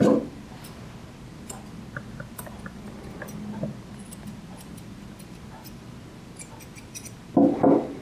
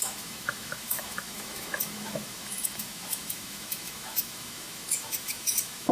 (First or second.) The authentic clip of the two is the first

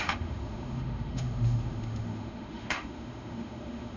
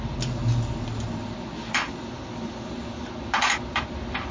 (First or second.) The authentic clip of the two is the second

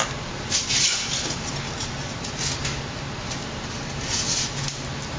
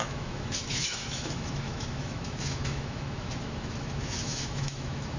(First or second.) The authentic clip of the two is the first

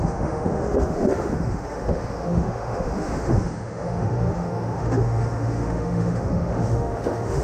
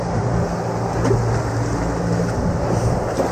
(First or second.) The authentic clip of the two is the second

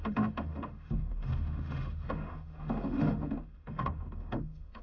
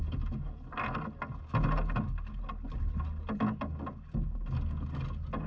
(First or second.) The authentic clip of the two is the second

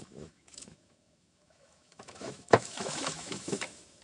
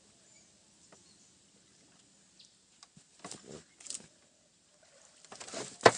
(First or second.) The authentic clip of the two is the second